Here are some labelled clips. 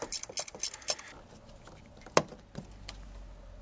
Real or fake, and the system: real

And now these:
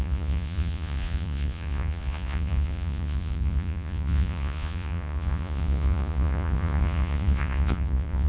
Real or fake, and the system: fake, vocoder, Vocos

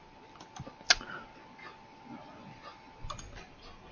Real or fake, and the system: real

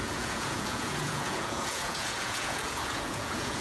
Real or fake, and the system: fake, vocoder, Vocos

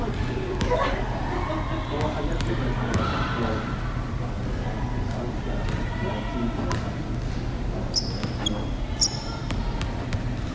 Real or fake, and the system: real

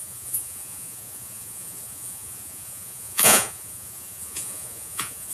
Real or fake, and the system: fake, vocoder, Vocos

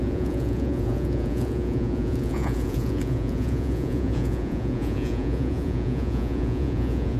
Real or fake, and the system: fake, vocoder, Vocos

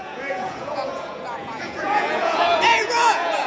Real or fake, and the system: fake, vocoder, Vocos